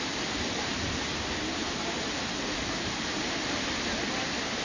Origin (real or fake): real